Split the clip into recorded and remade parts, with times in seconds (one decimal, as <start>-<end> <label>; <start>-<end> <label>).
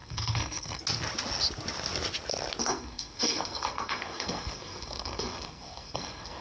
0.0-0.8 remade; 0.8-2.6 recorded; 2.6-6.4 remade